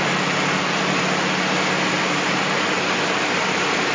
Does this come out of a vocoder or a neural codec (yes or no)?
no